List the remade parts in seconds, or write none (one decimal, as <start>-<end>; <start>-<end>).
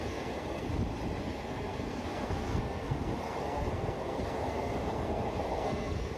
0.0-0.7; 1.2-6.2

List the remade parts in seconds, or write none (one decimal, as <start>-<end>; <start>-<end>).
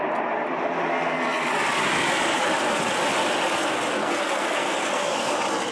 4.0-5.3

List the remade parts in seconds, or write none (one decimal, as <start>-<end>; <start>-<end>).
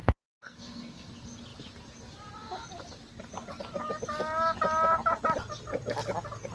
0.0-1.1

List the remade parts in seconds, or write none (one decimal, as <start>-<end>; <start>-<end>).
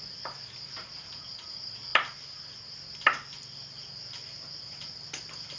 none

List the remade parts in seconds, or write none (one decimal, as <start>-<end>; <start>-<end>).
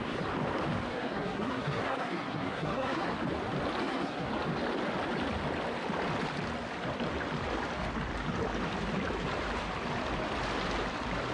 0.9-3.1; 3.8-4.3